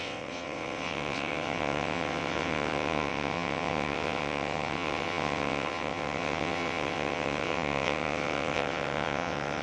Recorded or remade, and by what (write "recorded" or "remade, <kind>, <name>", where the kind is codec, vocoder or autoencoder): remade, vocoder, WaveNeXt